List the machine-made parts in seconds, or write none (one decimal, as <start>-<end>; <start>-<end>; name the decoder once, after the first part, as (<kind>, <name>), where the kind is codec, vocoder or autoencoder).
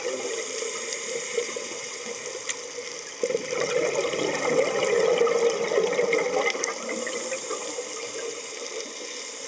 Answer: 1.3-2.1 (vocoder, WaveNeXt)